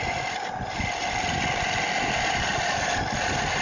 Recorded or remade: recorded